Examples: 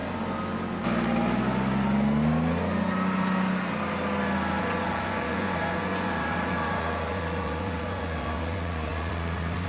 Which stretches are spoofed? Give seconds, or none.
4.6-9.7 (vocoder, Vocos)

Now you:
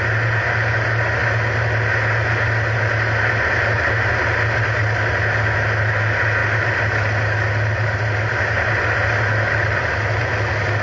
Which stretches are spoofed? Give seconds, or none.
none

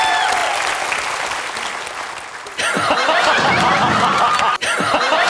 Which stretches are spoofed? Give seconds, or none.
none

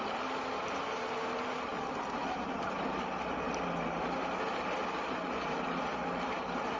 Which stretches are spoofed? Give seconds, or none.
none

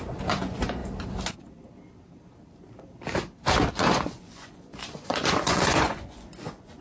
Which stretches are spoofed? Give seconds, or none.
0.0-0.8 (vocoder, Vocos); 3.7-6.8

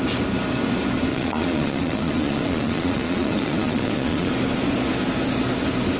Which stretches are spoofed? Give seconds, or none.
1.1-4.3 (vocoder, Vocos)